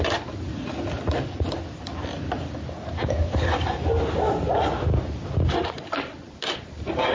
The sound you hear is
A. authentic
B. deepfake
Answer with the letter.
A